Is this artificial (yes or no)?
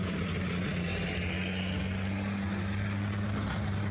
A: no